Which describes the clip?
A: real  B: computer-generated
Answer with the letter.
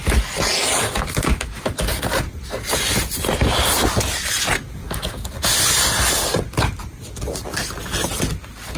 A